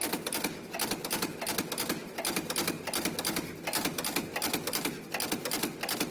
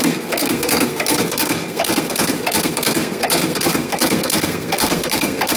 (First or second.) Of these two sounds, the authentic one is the first